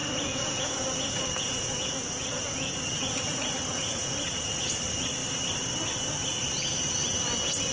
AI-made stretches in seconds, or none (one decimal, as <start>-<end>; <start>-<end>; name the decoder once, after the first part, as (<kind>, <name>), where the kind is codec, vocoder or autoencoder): 0.0-4.1 (vocoder, Vocos)